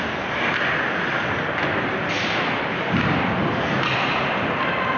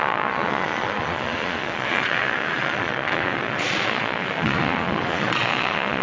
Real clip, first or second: first